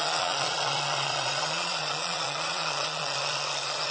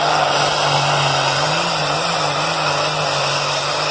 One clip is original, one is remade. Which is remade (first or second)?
first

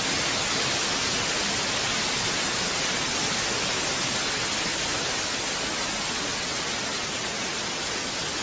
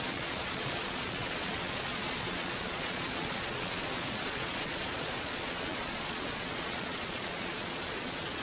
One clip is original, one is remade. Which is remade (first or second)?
second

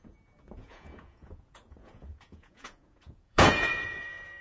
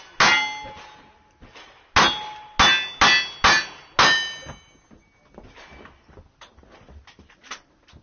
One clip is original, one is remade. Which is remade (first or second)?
first